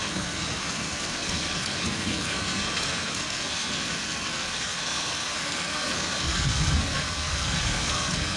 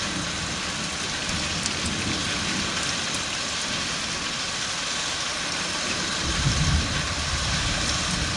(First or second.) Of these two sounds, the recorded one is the second